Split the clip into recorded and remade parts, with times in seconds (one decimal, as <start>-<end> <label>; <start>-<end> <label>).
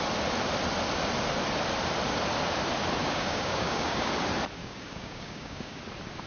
0.0-3.0 recorded; 3.0-4.1 remade; 4.1-4.6 recorded; 4.6-5.8 remade; 5.8-6.3 recorded